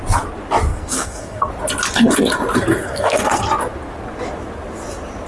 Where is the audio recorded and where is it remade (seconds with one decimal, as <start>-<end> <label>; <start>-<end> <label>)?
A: 0.0-0.7 recorded; 0.7-1.5 remade; 1.5-2.8 recorded; 2.8-3.4 remade; 3.4-5.3 recorded